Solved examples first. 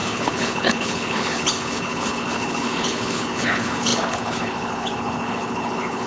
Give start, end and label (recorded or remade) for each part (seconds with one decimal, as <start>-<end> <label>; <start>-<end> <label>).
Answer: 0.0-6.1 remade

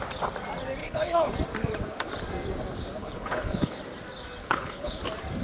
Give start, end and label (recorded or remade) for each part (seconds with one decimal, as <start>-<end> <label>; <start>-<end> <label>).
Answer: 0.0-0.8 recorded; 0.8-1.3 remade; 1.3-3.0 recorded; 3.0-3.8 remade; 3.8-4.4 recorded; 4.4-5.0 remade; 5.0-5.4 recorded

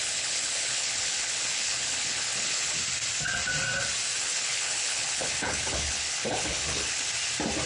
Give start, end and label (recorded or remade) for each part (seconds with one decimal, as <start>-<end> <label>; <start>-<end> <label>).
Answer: 0.0-2.8 remade; 2.8-4.2 recorded; 4.2-7.1 remade; 7.1-7.7 recorded